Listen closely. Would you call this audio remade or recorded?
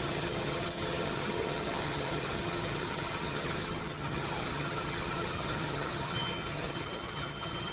remade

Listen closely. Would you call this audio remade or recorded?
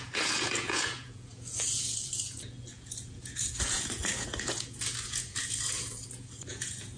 remade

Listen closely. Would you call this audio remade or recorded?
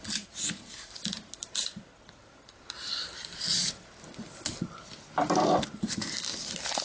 recorded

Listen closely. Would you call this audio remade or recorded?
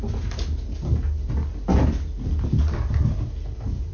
recorded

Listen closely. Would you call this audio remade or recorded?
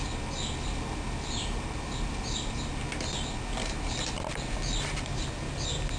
remade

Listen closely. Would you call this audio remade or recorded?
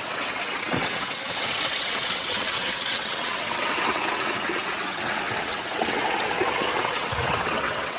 remade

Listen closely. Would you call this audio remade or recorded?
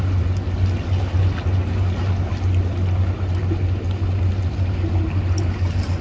recorded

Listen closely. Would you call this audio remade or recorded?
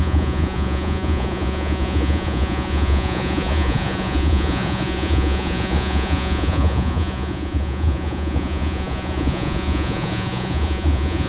remade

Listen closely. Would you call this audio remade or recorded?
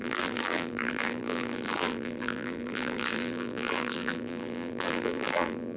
remade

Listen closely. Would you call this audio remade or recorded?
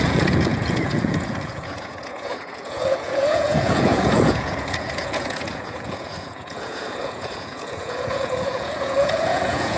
remade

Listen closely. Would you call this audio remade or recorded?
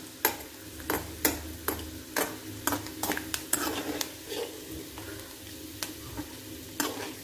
recorded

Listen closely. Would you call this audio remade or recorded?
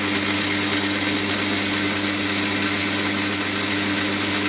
recorded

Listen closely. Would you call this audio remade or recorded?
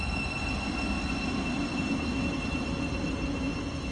recorded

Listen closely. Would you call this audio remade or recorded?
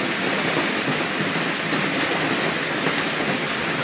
recorded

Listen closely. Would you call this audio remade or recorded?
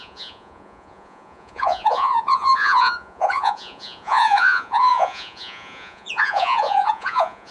remade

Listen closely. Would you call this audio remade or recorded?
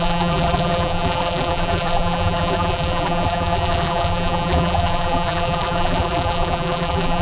remade